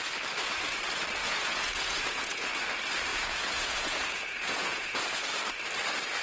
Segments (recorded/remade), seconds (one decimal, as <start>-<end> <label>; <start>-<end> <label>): 0.0-1.2 recorded; 1.2-2.5 remade; 2.5-3.1 recorded; 3.1-5.0 remade; 5.0-6.2 recorded